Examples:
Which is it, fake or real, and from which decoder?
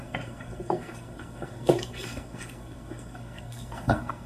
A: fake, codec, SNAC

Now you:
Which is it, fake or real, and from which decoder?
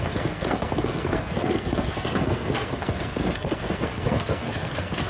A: fake, codec, SNAC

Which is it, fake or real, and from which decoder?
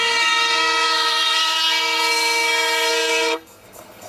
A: fake, codec, SNAC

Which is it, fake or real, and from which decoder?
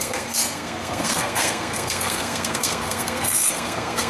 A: fake, codec, SNAC